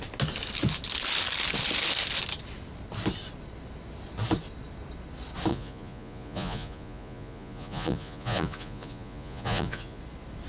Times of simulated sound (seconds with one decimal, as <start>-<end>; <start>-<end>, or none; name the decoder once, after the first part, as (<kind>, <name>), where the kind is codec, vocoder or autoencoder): 5.5-10.0 (vocoder, Vocos)